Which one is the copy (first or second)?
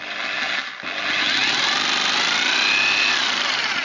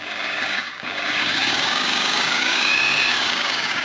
second